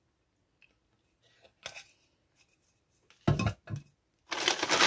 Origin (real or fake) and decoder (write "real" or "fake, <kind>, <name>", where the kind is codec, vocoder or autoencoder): real